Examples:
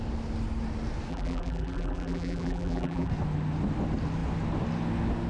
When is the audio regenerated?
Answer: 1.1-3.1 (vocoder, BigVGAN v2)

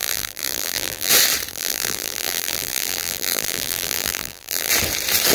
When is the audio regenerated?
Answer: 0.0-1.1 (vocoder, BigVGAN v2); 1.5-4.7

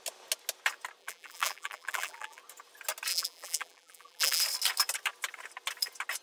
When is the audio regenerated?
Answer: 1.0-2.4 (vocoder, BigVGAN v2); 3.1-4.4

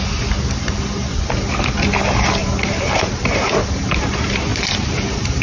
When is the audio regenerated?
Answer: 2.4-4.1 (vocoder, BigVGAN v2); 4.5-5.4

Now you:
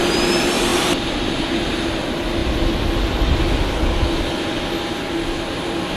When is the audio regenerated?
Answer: 0.7-1.9 (vocoder, BigVGAN v2)

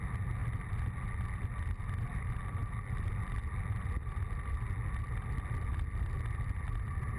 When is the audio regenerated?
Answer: none